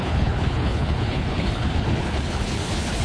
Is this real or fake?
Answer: fake